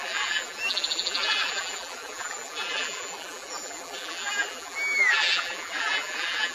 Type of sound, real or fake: fake